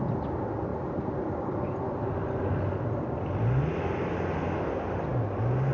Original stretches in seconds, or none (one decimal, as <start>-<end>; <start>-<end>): 0.0-5.7